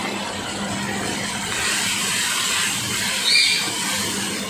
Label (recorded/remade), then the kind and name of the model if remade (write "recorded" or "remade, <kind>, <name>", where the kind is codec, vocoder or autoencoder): recorded